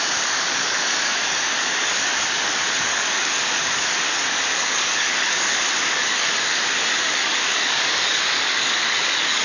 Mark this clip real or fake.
fake